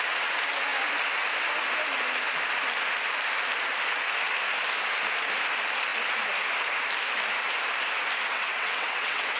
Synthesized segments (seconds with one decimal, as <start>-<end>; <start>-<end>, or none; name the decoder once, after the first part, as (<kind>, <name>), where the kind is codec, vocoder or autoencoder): 8.3-9.4 (vocoder, WaveNeXt)